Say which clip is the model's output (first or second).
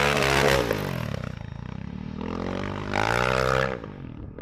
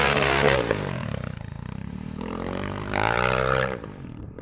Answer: second